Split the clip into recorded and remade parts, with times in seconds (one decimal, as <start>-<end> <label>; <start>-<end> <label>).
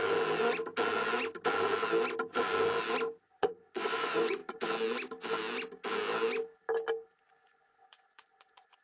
0.0-3.2 recorded; 3.2-4.4 remade; 4.4-7.2 recorded; 7.2-8.8 remade